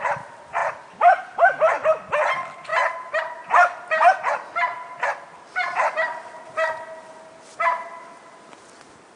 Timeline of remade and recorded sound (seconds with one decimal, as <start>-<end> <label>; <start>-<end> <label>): 0.0-0.6 recorded; 0.6-1.2 remade; 1.2-9.2 recorded